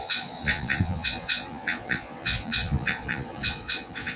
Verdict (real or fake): fake